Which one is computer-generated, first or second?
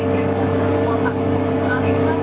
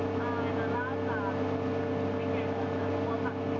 first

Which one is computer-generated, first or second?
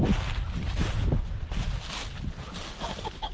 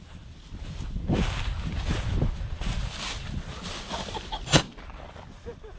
second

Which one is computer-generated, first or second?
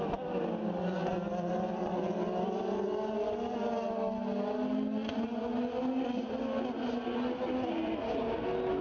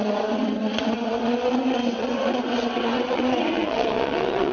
second